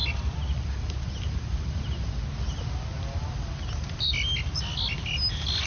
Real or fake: real